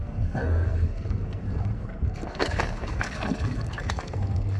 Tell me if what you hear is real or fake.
fake